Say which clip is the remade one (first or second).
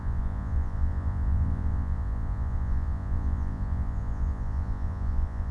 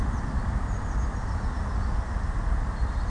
first